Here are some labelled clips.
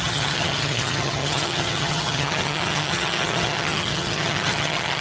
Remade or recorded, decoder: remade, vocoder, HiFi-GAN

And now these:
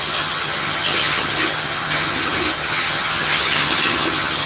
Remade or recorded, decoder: remade, vocoder, HiFi-GAN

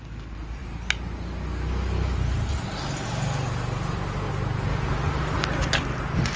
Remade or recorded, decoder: recorded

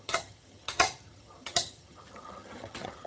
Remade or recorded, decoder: remade, vocoder, HiFi-GAN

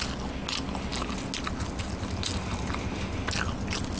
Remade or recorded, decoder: recorded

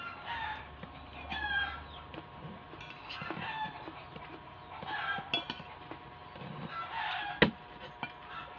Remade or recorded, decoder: recorded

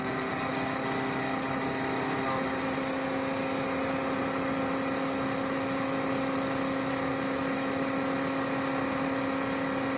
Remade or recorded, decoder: recorded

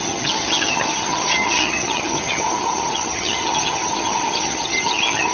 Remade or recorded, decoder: remade, vocoder, HiFi-GAN